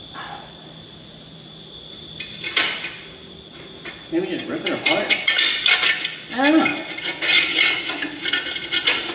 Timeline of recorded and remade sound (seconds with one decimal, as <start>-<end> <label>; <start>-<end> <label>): 0.0-4.4 recorded; 4.4-5.3 remade; 5.3-9.1 recorded